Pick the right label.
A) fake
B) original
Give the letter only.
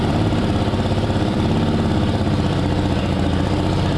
A